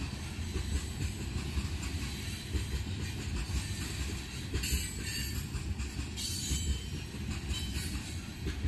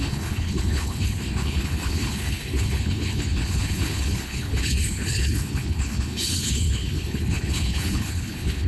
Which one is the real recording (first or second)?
first